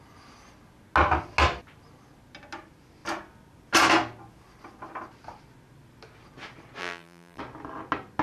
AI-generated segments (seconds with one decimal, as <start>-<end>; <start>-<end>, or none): 6.8-7.4